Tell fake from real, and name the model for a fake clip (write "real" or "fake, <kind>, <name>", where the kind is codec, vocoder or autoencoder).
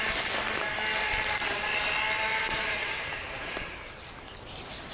real